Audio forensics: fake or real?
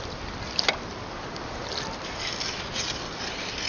real